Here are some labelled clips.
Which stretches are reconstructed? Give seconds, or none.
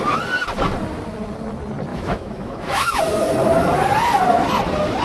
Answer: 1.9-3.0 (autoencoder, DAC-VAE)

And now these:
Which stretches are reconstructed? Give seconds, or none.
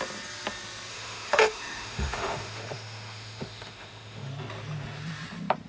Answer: 0.9-4.3 (autoencoder, DAC-VAE)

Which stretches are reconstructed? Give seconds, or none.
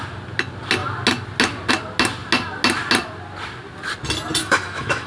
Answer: 4.4-5.1 (autoencoder, DAC-VAE)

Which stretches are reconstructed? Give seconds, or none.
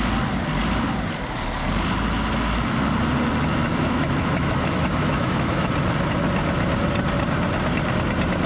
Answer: 3.7-5.7 (autoencoder, DAC-VAE)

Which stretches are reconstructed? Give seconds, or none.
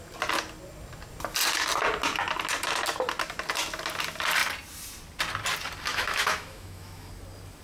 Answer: 5.9-7.1 (autoencoder, DAC-VAE)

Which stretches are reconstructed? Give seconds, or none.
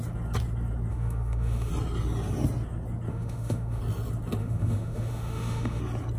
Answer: 0.9-1.7 (autoencoder, DAC-VAE); 3.1-3.8; 4.4-5.8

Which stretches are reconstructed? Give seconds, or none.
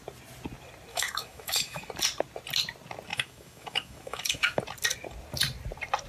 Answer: 0.9-1.8 (autoencoder, DAC-VAE); 3.1-4.6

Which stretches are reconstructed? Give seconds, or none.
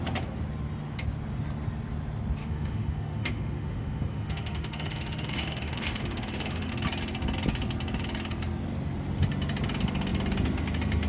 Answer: 2.4-6.7 (autoencoder, DAC-VAE)